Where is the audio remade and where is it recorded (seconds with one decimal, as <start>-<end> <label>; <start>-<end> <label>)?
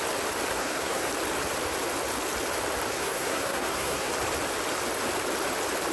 0.0-0.5 recorded; 0.5-1.1 remade; 1.1-2.9 recorded; 2.9-4.1 remade; 4.1-5.9 recorded